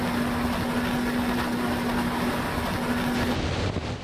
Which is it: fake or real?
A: real